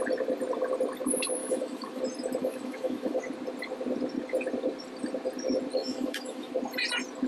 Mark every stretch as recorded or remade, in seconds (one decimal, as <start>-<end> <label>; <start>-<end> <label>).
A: 0.0-1.4 recorded; 1.4-2.0 remade; 2.0-2.4 recorded; 2.4-3.2 remade; 3.2-5.8 recorded; 5.8-6.5 remade; 6.5-7.3 recorded